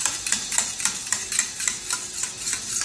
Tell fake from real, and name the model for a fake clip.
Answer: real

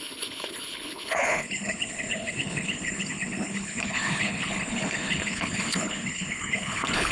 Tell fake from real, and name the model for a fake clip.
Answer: fake, codec, HILCodec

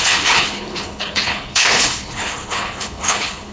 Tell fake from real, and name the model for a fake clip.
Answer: fake, codec, HILCodec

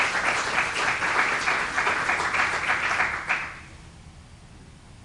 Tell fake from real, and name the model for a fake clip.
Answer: real